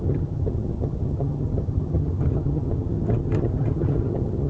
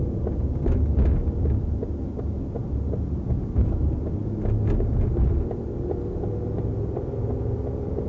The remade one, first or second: first